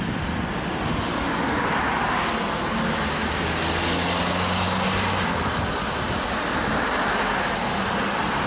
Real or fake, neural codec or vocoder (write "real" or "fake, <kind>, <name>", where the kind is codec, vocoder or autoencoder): real